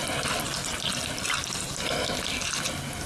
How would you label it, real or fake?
real